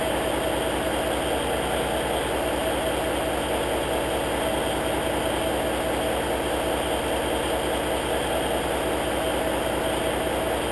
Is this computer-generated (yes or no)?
no